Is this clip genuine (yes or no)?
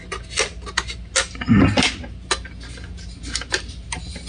yes